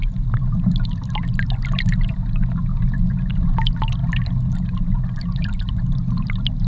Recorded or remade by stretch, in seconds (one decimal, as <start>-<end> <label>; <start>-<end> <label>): 0.0-6.7 recorded